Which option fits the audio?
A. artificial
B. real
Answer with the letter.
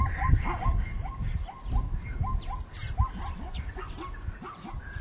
B